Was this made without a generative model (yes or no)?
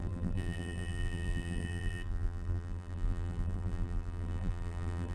no